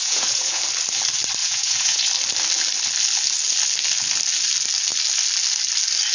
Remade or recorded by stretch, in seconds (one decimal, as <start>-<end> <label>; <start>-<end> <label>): 0.0-0.6 remade; 0.6-1.4 recorded; 1.4-2.1 remade; 2.1-6.1 recorded